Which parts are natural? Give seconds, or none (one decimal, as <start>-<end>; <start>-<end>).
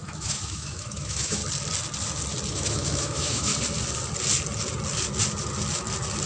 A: 1.4-2.5; 3.5-6.3